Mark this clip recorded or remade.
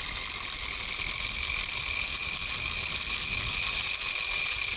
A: recorded